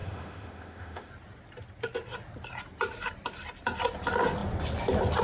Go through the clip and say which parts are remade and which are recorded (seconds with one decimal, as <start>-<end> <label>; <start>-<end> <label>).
0.0-1.1 remade; 1.1-5.2 recorded